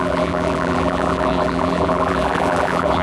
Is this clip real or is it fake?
fake